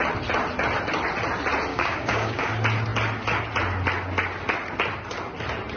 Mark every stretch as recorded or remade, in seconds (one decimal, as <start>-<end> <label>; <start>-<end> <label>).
0.0-1.7 recorded; 1.7-2.5 remade; 2.5-5.8 recorded